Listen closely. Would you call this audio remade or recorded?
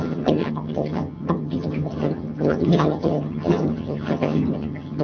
remade